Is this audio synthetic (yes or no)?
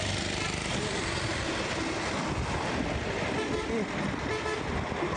no